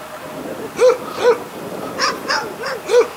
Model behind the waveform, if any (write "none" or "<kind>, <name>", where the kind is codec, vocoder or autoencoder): none